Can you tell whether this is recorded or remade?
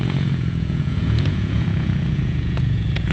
remade